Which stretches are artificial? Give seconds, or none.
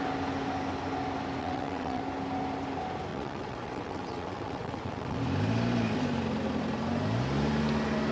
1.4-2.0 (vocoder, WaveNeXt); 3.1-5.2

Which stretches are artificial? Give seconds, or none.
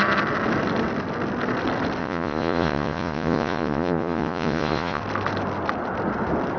2.0-5.0 (vocoder, Vocos)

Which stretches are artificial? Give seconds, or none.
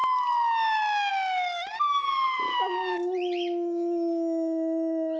none